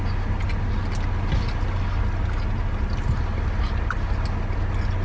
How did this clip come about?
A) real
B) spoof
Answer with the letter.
A